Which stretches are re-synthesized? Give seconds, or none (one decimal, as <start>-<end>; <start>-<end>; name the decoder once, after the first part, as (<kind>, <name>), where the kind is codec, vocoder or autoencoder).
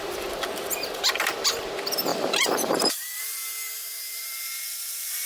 2.1-5.3 (vocoder, BigVGAN v2)